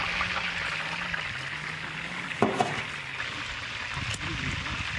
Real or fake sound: real